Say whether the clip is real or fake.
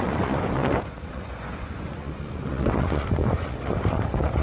fake